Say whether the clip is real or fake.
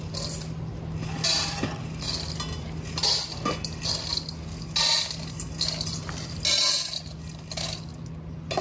real